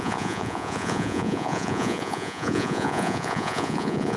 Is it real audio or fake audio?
fake